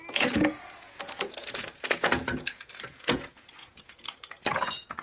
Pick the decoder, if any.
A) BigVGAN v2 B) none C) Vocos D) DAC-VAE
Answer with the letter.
C